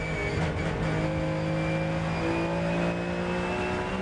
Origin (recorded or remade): recorded